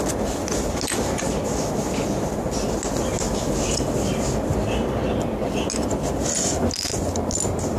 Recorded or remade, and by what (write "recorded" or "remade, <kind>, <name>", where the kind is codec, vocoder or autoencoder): recorded